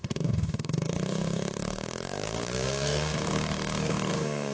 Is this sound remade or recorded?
remade